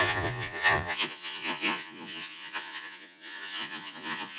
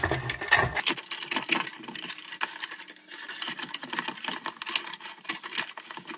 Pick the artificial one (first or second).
first